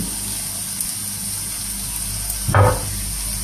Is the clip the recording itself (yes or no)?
yes